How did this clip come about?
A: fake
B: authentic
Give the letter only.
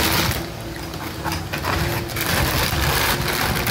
B